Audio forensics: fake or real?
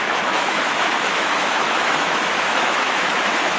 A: fake